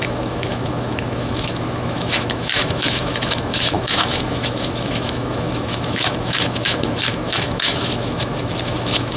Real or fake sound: fake